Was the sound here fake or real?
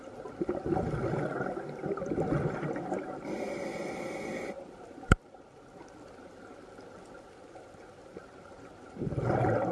fake